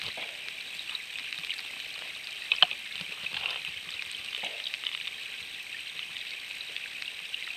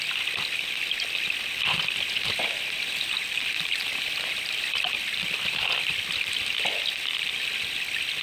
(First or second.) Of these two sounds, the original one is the first